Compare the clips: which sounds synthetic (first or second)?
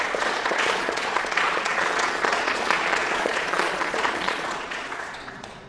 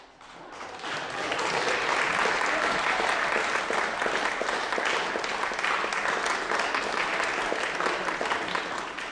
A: first